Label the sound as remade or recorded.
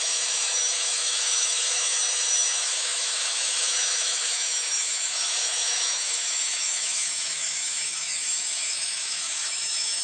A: remade